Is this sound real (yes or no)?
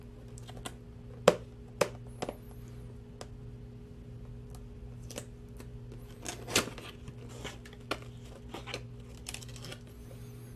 yes